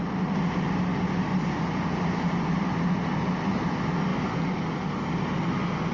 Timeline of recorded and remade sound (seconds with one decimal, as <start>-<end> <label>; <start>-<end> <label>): 0.0-5.9 recorded